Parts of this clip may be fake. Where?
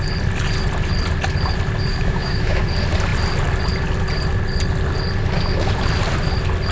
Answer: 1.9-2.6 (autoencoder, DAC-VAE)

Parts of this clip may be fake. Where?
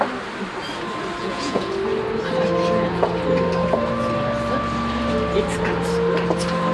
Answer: 1.2-1.7 (vocoder, Vocos)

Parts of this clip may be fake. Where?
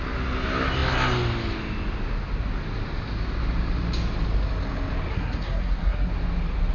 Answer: 5.1-6.1 (codec, SNAC)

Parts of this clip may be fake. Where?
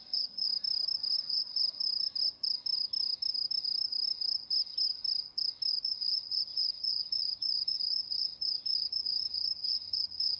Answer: 0.0-0.5 (vocoder, Vocos); 1.2-1.6; 5.7-10.4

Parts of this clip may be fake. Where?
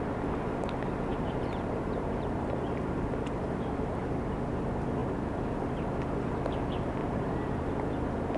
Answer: 1.1-4.0 (vocoder, BigVGAN v2); 7.0-7.7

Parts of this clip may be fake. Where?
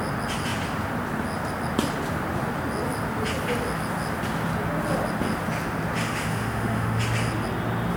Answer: 6.0-7.0 (autoencoder, DAC-VAE)